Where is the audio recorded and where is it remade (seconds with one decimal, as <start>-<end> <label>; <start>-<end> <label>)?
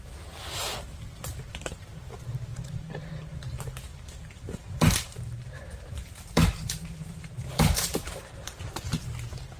0.0-2.5 recorded; 2.5-3.1 remade; 3.1-3.9 recorded; 3.9-8.9 remade; 8.9-9.6 recorded